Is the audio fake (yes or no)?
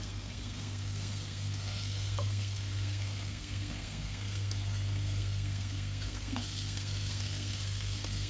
yes